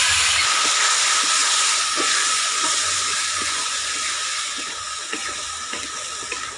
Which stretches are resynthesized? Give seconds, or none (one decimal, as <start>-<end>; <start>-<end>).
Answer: 1.4-5.4